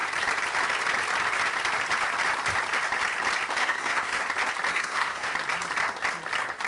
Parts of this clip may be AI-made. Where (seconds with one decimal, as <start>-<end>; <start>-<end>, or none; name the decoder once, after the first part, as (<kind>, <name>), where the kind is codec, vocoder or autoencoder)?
3.6-4.2 (codec, SNAC); 4.7-5.3